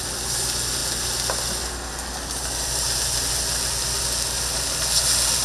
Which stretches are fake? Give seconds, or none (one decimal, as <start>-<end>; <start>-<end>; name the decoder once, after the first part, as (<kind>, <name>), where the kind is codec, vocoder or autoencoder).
none